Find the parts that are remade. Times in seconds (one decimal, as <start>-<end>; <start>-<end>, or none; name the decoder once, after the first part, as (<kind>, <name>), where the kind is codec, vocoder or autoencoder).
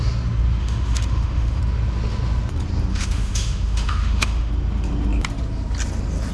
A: 0.6-1.6 (autoencoder, DAC-VAE); 2.9-4.5